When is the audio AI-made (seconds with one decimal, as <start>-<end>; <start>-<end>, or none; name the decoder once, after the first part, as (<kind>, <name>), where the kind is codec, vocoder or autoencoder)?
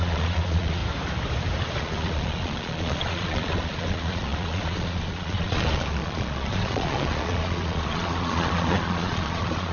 0.0-0.8 (vocoder, Vocos); 1.8-9.7